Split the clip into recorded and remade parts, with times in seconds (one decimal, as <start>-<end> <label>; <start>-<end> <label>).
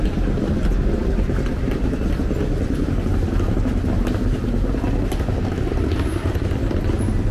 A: 0.0-7.3 recorded